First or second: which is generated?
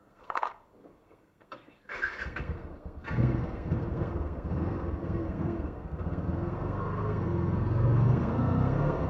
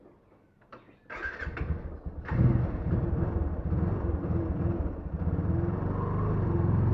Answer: first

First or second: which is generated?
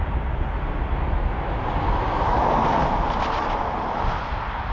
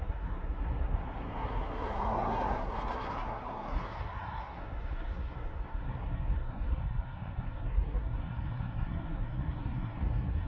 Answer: second